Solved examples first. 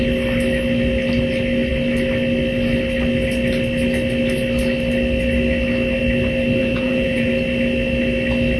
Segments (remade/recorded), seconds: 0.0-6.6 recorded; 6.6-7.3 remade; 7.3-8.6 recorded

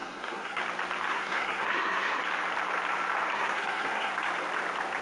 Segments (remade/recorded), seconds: 0.0-0.6 remade; 0.6-1.1 recorded; 1.1-2.2 remade; 2.2-3.3 recorded; 3.3-4.1 remade; 4.1-5.0 recorded